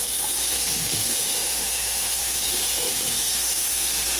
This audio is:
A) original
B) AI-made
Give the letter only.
B